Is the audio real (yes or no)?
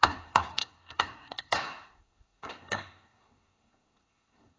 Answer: no